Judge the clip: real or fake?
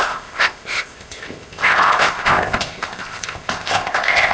fake